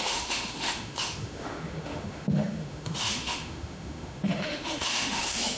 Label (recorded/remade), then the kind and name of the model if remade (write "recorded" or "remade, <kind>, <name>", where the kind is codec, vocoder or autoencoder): remade, autoencoder, DAC-VAE